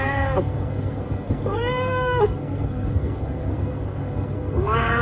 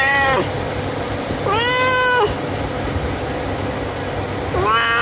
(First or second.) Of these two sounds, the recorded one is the second